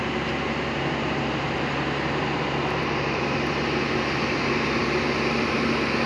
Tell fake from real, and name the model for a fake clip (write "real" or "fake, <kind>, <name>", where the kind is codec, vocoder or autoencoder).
real